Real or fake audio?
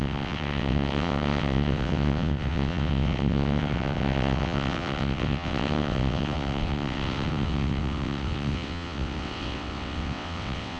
fake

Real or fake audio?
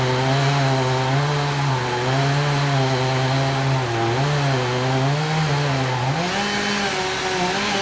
real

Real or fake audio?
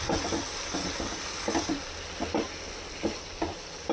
real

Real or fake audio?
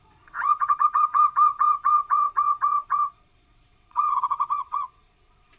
fake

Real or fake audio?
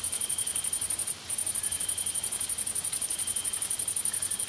real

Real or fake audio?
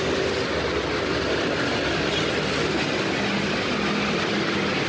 real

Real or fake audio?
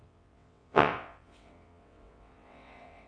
fake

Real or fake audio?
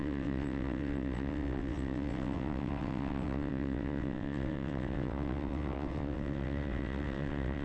fake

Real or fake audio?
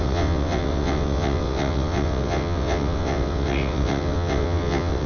fake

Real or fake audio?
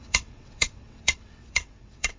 fake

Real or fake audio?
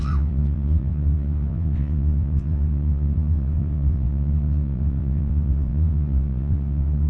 fake